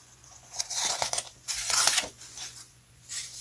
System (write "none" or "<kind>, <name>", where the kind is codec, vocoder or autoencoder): vocoder, Vocos